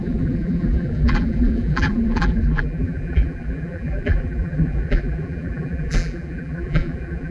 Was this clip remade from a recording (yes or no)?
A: yes